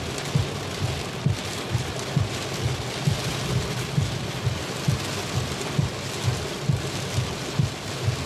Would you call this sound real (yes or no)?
yes